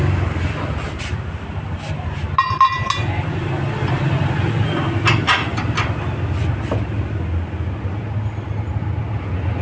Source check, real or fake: real